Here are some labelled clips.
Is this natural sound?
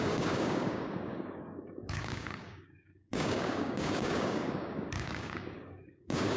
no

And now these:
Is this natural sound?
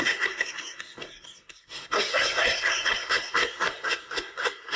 no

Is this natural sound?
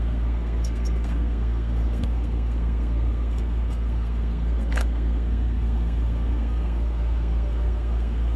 no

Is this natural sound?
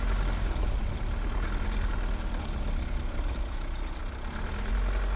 yes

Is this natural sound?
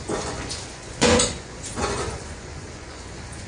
no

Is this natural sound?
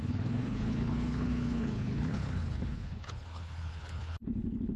no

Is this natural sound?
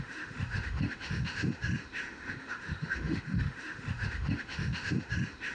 no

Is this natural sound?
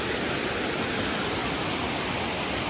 yes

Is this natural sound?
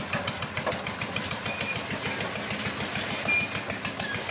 yes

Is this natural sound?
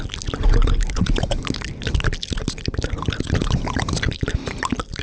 yes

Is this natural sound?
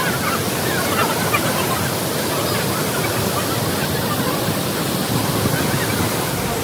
yes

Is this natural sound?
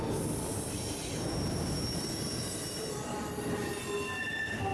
yes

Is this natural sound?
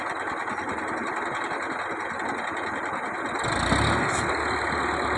yes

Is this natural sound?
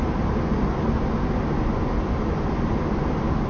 yes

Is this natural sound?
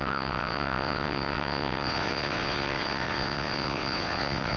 no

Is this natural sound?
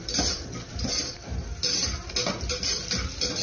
yes